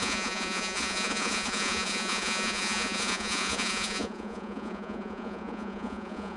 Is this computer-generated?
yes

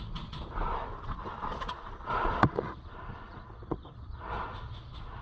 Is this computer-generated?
yes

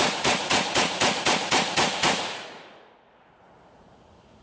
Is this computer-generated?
yes